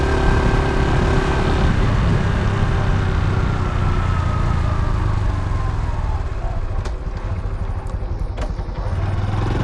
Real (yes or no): yes